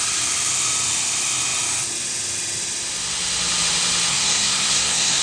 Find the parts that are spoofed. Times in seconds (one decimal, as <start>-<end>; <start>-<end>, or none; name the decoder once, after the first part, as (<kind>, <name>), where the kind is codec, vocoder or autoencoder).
4.1-5.2 (codec, SNAC)